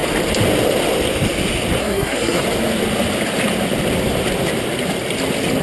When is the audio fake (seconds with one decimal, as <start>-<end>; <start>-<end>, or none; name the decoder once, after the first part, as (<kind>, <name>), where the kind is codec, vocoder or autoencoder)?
1.8-2.4 (codec, SNAC)